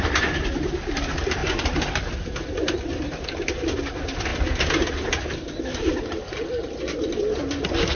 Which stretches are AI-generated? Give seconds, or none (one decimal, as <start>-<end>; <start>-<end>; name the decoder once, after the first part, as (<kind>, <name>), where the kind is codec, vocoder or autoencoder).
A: none